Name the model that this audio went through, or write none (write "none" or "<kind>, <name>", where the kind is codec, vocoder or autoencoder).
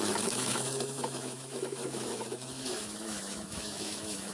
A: autoencoder, DAC-VAE